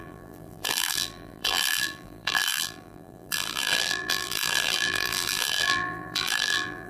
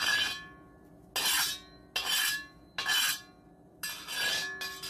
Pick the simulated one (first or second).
first